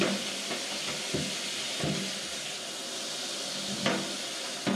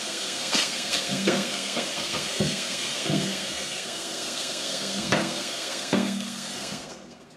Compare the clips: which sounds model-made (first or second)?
second